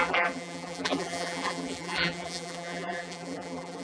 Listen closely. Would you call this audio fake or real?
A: fake